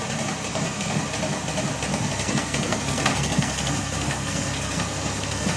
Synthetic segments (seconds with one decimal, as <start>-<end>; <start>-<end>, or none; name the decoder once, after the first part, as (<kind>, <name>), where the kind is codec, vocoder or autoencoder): 0.5-1.0 (codec, SNAC); 1.9-5.6